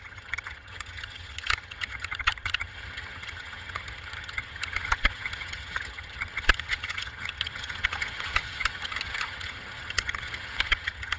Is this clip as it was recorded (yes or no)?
no